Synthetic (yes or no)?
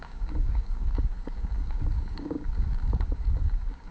yes